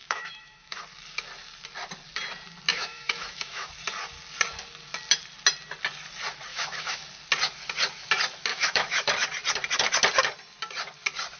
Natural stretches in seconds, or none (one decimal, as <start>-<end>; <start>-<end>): 0.8-2.7; 3.7-6.5; 7.1-8.5; 9.1-11.4